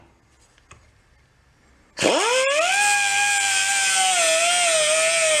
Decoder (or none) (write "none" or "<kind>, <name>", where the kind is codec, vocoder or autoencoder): none